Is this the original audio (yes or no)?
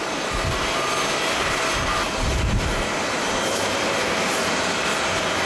yes